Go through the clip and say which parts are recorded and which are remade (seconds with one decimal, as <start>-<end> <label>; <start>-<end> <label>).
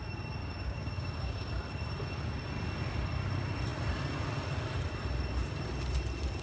0.0-0.4 recorded; 0.4-1.6 remade; 1.6-6.4 recorded